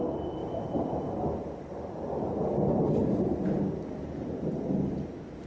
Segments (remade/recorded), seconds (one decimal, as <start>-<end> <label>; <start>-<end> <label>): 0.0-0.4 recorded; 0.4-1.1 remade; 1.1-3.0 recorded; 3.0-3.8 remade; 3.8-5.5 recorded